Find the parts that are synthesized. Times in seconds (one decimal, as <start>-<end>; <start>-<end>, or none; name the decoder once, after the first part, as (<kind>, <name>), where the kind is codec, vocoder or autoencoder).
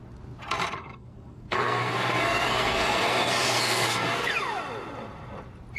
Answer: 0.8-4.3 (codec, SNAC)